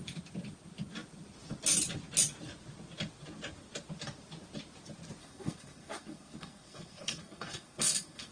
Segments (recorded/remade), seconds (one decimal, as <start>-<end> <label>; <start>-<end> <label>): 0.0-5.2 recorded; 5.2-8.3 remade